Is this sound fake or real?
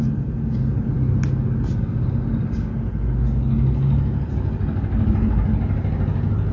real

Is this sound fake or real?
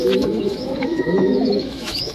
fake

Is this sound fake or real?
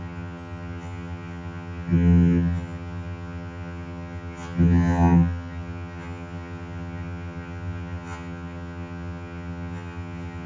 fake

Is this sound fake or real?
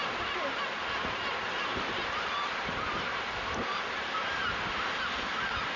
real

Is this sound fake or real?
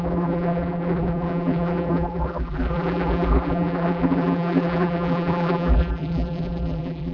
fake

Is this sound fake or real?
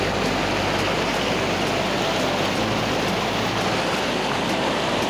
real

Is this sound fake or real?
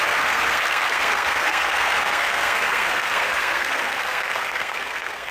fake